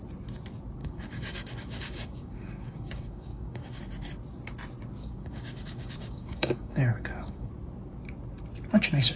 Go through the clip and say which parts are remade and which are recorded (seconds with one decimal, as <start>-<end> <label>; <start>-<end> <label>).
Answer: 0.0-0.8 recorded; 0.8-3.8 remade; 3.8-5.0 recorded; 5.0-7.5 remade; 7.5-9.2 recorded